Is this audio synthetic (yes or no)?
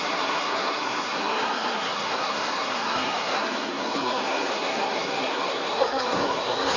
yes